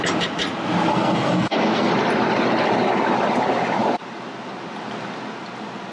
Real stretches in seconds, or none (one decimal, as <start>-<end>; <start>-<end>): 0.0-0.9; 1.9-5.9